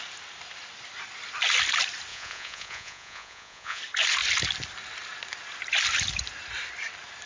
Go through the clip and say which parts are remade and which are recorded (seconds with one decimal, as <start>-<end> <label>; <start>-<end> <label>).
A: 0.0-2.1 recorded; 2.1-3.8 remade; 3.8-7.3 recorded